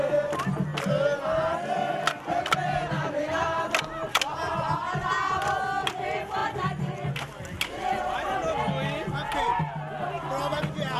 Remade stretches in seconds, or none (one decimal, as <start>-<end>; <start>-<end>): none